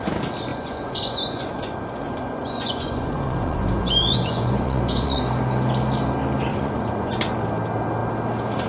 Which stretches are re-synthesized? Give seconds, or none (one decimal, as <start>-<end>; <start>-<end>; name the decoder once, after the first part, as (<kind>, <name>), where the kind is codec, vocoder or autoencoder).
0.5-5.2 (vocoder, Vocos); 6.5-7.4